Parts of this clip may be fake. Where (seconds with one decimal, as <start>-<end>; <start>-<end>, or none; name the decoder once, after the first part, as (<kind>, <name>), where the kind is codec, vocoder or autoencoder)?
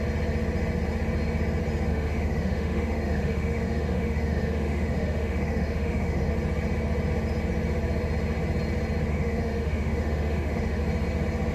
1.9-6.3 (autoencoder, DAC-VAE); 9.1-10.8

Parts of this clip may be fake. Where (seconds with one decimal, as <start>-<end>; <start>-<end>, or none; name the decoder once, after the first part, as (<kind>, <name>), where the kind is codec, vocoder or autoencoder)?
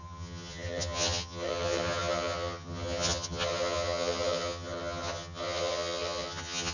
0.0-6.7 (vocoder, HiFi-GAN)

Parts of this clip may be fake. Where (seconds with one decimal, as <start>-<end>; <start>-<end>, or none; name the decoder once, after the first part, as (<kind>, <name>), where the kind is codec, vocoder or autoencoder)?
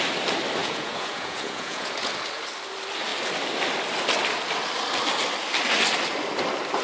0.6-2.1 (vocoder, Vocos)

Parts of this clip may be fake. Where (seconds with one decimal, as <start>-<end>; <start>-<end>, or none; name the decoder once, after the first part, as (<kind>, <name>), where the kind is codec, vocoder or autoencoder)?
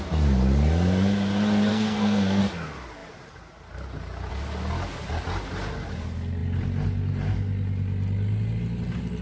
1.7-2.4 (codec, SNAC)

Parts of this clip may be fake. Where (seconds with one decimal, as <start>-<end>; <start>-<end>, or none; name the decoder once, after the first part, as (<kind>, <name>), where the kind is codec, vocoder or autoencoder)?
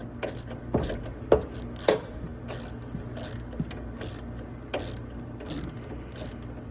none